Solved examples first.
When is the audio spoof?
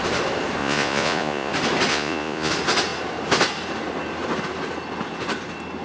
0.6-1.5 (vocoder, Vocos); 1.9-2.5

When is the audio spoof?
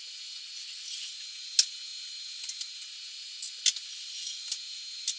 none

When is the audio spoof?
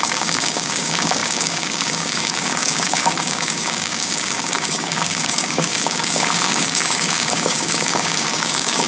0.0-8.9 (codec, DAC)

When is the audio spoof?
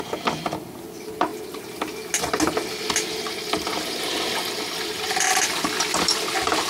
none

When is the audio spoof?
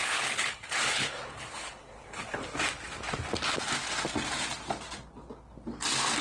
0.0-2.4 (codec, HILCodec)